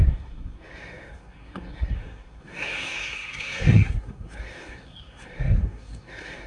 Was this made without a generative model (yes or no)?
no